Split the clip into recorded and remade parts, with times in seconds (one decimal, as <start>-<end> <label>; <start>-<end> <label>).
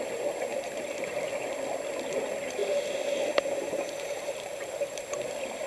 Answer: 0.0-0.5 recorded; 0.5-1.3 remade; 1.3-3.7 recorded; 3.7-5.0 remade; 5.0-5.7 recorded